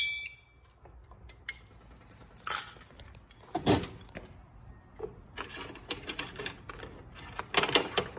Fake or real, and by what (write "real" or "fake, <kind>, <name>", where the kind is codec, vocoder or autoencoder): real